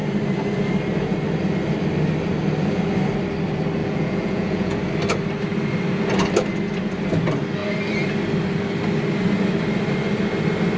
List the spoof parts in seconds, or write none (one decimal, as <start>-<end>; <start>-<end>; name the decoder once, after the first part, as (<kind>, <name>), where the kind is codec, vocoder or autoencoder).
3.8-4.8 (vocoder, Vocos)

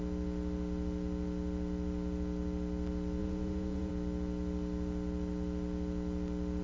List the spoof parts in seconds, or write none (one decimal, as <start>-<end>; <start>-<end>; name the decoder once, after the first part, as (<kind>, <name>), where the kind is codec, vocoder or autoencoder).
3.2-3.9 (vocoder, Vocos)

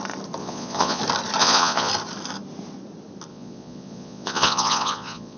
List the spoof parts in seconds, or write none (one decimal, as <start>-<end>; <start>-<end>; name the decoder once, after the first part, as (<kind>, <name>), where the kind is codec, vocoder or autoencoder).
0.4-1.0 (vocoder, Vocos); 1.4-1.9; 3.3-5.4

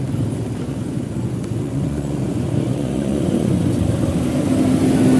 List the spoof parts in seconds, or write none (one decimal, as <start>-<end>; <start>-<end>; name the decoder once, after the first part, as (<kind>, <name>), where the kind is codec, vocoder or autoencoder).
0.7-3.8 (vocoder, Vocos)

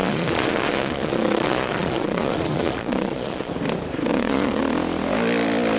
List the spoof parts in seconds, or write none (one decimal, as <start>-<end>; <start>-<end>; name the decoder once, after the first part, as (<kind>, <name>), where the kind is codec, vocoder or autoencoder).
0.0-3.5 (vocoder, Vocos); 4.1-4.6

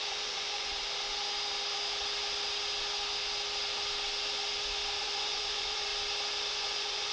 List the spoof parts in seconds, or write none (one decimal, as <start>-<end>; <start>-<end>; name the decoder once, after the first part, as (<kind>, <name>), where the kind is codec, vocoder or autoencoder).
0.0-0.7 (vocoder, Vocos); 5.0-5.9; 6.5-7.1

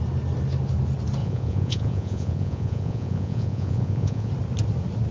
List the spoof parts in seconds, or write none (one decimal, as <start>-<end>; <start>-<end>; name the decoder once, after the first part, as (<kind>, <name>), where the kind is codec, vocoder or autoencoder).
1.2-4.3 (vocoder, Vocos)

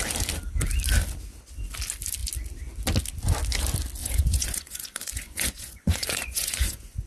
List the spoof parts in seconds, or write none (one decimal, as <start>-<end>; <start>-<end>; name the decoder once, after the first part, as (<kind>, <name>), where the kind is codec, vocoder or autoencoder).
4.0-7.1 (vocoder, Vocos)